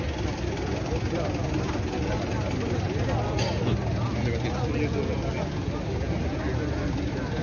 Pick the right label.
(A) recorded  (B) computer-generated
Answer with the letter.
A